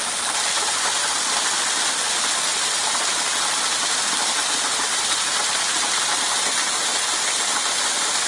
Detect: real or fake real